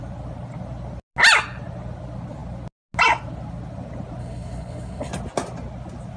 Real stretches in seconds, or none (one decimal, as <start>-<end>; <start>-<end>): 0.0-4.2; 5.1-6.2